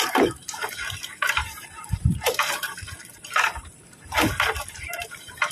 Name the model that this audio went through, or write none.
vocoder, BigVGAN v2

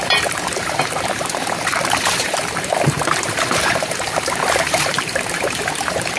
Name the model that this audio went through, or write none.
vocoder, BigVGAN v2